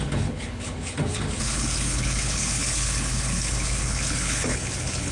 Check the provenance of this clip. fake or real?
fake